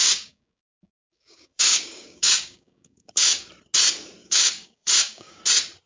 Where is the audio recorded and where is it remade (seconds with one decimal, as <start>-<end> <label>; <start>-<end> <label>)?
0.0-3.5 remade; 3.5-4.2 recorded; 4.2-5.4 remade; 5.4-5.9 recorded